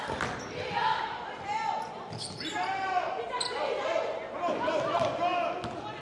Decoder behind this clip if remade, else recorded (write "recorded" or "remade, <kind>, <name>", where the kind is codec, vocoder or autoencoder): recorded